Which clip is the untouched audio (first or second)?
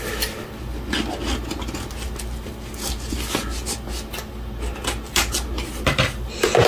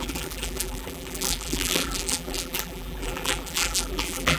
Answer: first